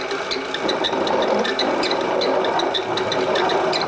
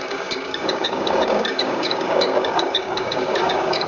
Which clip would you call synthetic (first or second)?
second